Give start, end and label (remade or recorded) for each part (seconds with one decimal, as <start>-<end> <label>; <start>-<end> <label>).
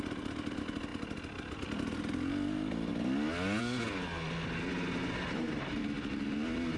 0.0-5.0 recorded; 5.0-5.8 remade; 5.8-6.8 recorded